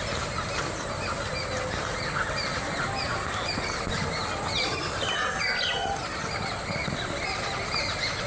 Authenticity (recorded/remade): recorded